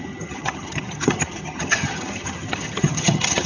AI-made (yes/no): yes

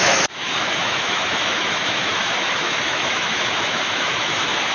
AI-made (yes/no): yes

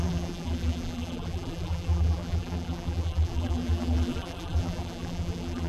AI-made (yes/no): yes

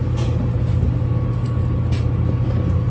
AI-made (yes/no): no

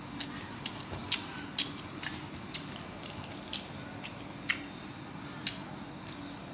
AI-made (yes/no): no